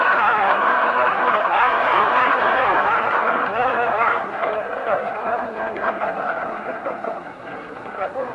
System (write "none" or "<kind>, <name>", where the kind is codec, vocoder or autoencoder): codec, SNAC